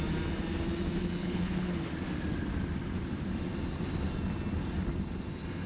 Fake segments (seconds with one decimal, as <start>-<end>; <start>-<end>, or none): 1.2-1.9